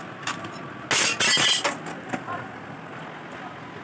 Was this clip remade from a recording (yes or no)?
no